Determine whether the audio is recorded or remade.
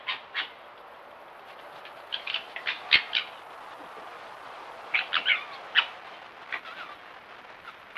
recorded